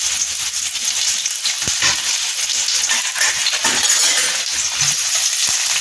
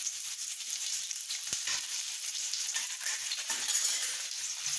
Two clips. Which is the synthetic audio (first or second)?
second